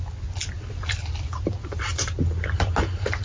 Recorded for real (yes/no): yes